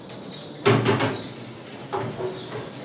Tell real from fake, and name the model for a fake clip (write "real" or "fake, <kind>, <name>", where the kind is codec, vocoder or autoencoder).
real